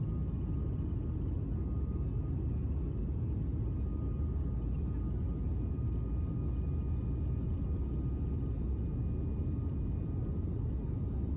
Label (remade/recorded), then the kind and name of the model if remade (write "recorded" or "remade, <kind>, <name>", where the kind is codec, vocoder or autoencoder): recorded